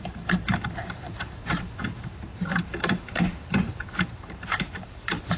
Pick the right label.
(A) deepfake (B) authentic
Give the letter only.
A